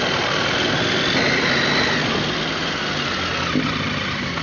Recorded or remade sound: recorded